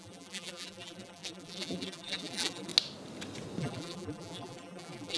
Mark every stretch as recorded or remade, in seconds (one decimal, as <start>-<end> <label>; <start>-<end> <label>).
0.0-2.7 remade; 2.7-3.6 recorded; 3.6-5.2 remade